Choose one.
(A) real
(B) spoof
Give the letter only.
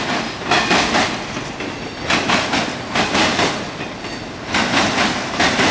A